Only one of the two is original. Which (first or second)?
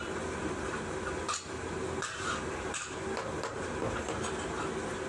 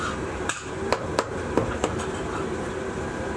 first